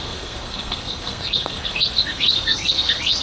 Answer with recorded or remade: remade